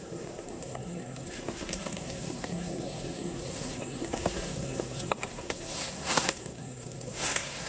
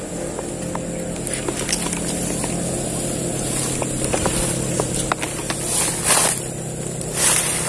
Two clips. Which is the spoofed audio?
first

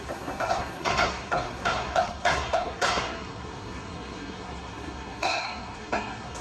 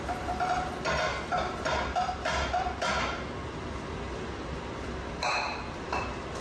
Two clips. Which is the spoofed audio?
first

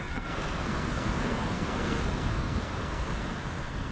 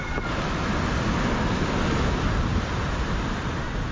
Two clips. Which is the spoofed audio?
first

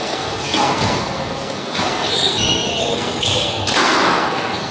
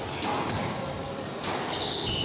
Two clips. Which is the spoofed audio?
first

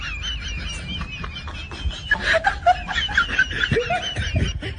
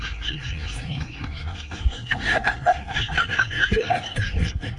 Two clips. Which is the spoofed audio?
second